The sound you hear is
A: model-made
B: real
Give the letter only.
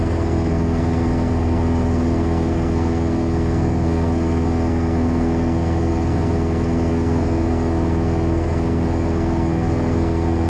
A